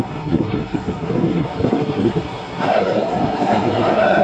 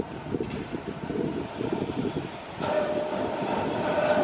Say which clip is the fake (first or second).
first